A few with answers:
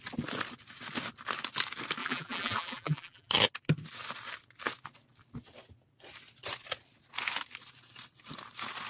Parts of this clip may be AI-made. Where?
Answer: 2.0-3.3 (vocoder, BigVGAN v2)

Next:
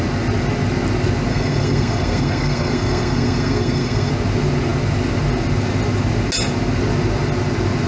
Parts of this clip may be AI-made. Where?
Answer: 1.3-4.1 (codec, SNAC)

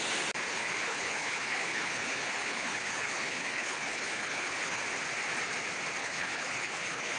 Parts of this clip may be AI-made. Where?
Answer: 0.5-4.8 (codec, HILCodec); 6.0-7.2

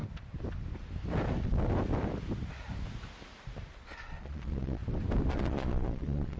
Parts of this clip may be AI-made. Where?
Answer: 3.8-4.8 (vocoder, Vocos); 5.3-6.4

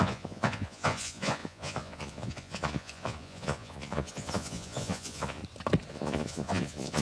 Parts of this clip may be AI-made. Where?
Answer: 0.0-5.4 (vocoder, Vocos); 5.9-7.0